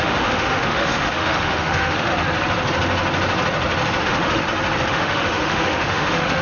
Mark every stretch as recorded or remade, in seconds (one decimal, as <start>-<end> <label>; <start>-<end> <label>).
0.0-2.1 remade; 2.1-4.0 recorded; 4.0-4.4 remade; 4.4-4.9 recorded; 4.9-6.4 remade